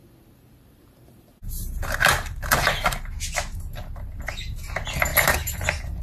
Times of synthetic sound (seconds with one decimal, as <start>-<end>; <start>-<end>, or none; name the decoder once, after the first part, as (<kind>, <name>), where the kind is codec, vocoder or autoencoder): 0.0-3.1 (vocoder, BigVGAN v2); 5.1-6.0